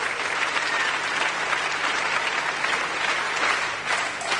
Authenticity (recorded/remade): remade